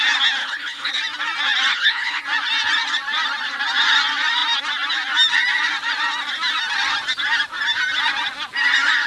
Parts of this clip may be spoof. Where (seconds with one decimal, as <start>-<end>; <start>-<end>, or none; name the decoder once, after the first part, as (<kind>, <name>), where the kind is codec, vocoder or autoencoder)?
0.4-0.9 (codec, HILCodec); 1.7-2.2